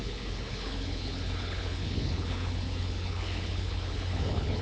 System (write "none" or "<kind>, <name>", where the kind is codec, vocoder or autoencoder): codec, HILCodec